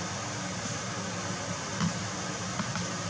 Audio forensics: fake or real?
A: real